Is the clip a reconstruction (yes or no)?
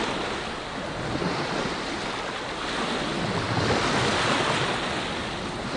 yes